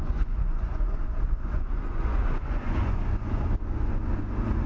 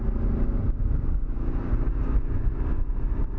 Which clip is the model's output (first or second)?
first